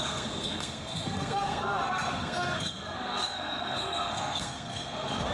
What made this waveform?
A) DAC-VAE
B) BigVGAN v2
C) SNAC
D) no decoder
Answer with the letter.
C